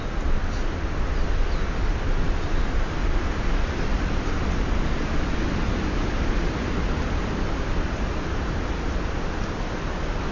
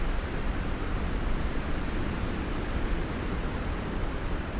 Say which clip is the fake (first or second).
second